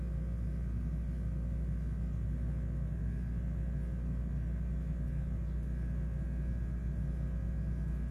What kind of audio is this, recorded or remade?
recorded